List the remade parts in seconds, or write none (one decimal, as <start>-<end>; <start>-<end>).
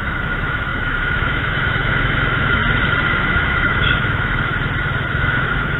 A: 0.0-2.6; 3.2-4.5; 5.1-5.8